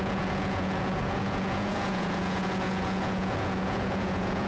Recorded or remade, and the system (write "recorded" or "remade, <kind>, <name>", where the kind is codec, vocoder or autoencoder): remade, vocoder, Vocos